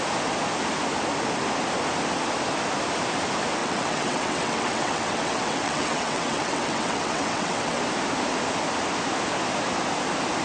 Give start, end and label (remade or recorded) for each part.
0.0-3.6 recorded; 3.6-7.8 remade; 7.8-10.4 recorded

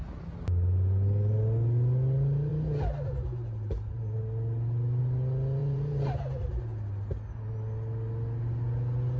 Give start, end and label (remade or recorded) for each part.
0.0-5.6 recorded; 5.6-6.6 remade; 6.6-9.2 recorded

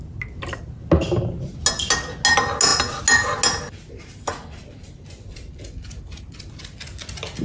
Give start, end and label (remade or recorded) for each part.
0.0-7.4 recorded

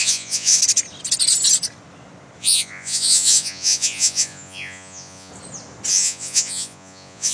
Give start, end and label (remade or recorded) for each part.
0.0-0.6 remade; 0.6-2.4 recorded; 2.4-5.3 remade; 5.3-5.9 recorded; 5.9-7.3 remade

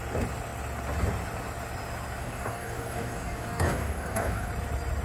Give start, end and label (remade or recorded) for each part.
0.0-2.2 recorded; 2.2-4.5 remade; 4.5-5.0 recorded

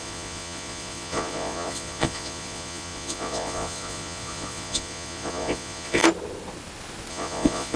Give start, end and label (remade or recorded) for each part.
0.0-6.0 remade; 6.0-7.1 recorded; 7.1-7.8 remade

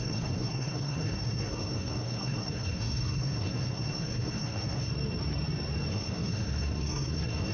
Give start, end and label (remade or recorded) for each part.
0.0-4.9 remade; 4.9-5.9 recorded; 5.9-7.5 remade